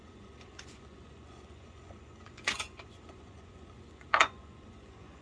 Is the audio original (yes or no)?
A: no